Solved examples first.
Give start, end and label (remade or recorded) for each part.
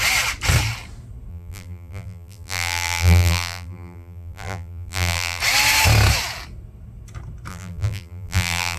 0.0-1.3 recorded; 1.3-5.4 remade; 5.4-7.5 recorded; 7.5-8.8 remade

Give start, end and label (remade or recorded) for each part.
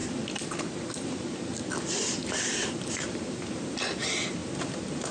0.0-2.2 recorded; 2.2-3.9 remade; 3.9-5.1 recorded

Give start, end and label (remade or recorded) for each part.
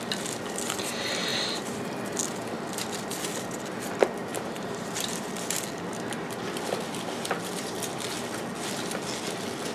0.0-1.3 recorded; 1.3-1.8 remade; 1.8-4.3 recorded; 4.3-5.3 remade; 5.3-9.7 recorded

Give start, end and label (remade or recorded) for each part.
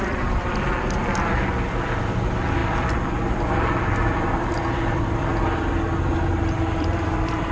0.0-5.3 remade; 5.3-6.3 recorded; 6.3-7.5 remade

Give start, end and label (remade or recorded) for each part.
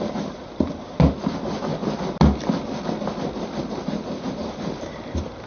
0.0-1.7 remade; 1.7-3.8 recorded; 3.8-5.5 remade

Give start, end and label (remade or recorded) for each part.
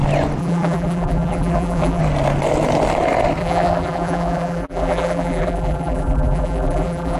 0.0-0.4 recorded; 0.4-2.0 remade; 2.0-3.4 recorded; 3.4-7.2 remade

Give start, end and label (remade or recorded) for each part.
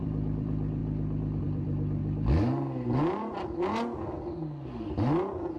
0.0-0.8 remade; 0.8-1.4 recorded; 1.4-2.0 remade; 2.0-5.6 recorded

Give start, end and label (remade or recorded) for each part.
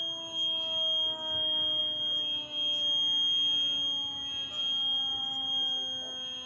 0.0-5.1 recorded; 5.1-5.7 remade; 5.7-6.5 recorded